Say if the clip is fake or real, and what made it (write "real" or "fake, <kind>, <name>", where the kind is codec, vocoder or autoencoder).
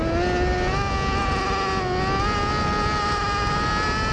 real